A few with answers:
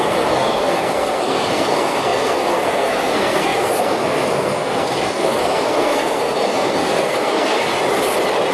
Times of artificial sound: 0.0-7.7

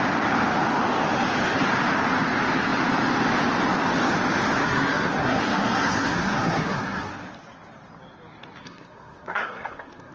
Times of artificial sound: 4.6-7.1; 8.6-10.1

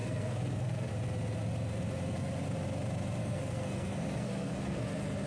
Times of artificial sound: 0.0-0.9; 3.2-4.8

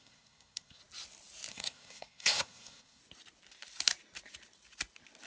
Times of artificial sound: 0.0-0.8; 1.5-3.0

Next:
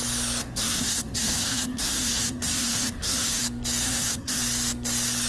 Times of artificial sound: 0.4-3.4; 3.8-4.4